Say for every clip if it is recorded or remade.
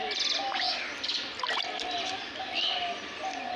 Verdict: recorded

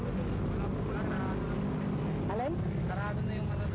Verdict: recorded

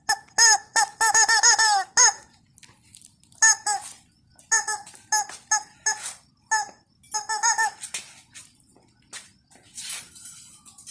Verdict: recorded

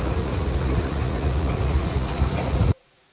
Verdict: remade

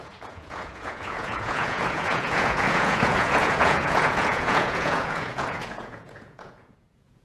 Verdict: remade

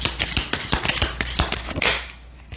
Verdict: recorded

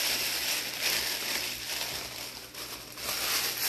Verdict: recorded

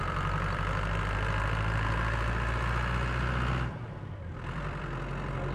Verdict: remade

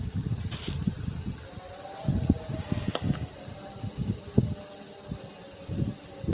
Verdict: recorded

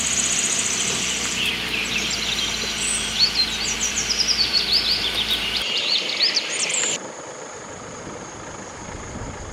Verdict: remade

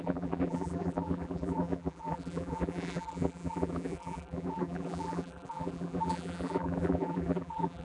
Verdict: remade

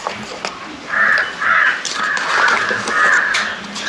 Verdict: recorded